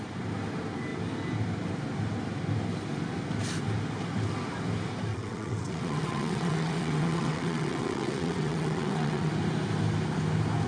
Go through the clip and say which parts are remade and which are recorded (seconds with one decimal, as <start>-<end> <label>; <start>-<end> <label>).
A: 0.0-5.1 recorded; 5.1-9.3 remade; 9.3-10.7 recorded